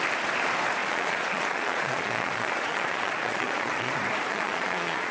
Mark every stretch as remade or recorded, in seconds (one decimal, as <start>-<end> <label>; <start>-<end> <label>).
0.0-0.8 recorded; 0.8-3.9 remade; 3.9-4.3 recorded; 4.3-5.1 remade